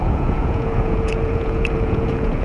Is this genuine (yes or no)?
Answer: no